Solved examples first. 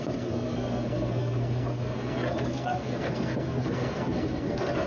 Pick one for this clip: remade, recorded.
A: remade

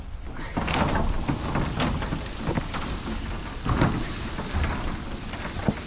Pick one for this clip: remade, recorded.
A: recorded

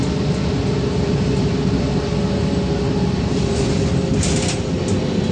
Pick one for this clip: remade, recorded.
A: recorded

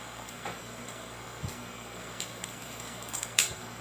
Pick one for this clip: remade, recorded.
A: remade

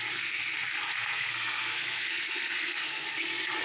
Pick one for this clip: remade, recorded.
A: remade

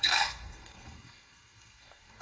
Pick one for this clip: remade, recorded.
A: remade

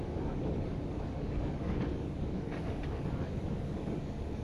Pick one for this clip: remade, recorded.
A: remade